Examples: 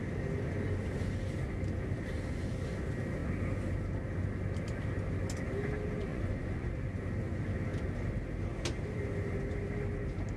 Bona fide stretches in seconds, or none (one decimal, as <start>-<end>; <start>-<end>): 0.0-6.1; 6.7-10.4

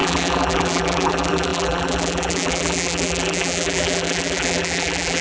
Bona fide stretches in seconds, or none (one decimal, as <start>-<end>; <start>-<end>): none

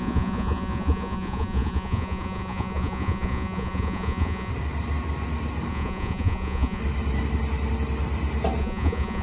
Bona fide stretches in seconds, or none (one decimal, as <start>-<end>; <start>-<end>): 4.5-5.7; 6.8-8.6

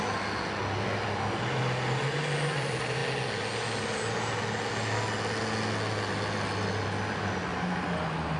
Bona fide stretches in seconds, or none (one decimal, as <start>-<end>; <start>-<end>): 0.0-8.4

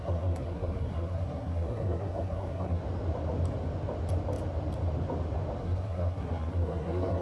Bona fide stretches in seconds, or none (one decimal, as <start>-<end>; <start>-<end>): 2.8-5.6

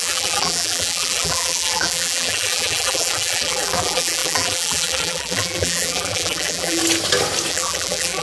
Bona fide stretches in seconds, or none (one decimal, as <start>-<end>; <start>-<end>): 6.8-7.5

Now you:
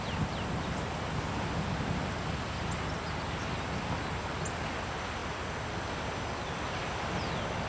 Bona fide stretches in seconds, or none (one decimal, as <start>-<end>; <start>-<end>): 0.0-7.7

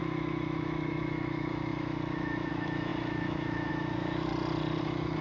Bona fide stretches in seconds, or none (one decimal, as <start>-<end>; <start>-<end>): 4.3-4.8